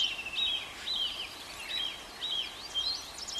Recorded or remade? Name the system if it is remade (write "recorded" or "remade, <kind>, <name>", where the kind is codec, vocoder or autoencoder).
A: recorded